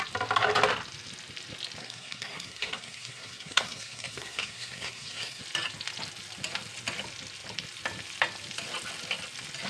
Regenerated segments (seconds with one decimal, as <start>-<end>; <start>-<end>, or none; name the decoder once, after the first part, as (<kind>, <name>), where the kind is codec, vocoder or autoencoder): 1.8-5.4 (codec, SNAC)